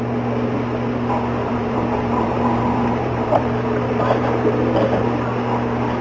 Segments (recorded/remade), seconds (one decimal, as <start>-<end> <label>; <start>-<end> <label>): 0.0-1.4 recorded; 1.4-5.0 remade; 5.0-6.0 recorded